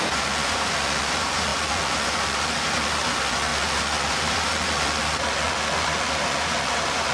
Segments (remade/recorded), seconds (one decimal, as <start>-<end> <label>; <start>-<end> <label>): 0.0-7.1 remade